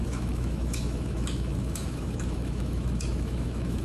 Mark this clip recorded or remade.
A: remade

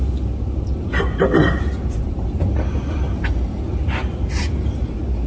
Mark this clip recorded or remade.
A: recorded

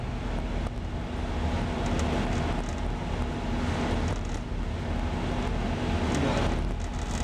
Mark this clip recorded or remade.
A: recorded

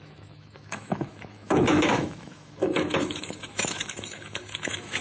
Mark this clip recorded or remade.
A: remade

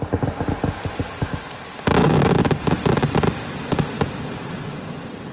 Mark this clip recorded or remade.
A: recorded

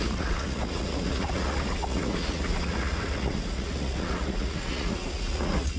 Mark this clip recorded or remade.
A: remade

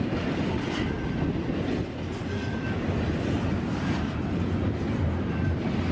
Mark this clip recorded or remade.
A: recorded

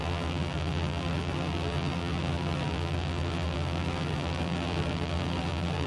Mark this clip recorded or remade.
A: remade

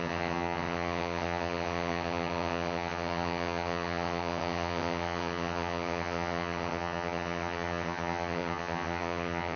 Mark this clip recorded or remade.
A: remade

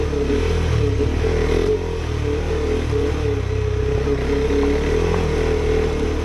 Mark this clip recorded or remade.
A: recorded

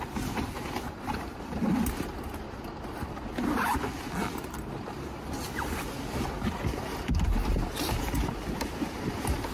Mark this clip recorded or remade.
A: recorded